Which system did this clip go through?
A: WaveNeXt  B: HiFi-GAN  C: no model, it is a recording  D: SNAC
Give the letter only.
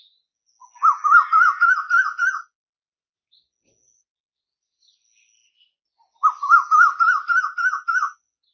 C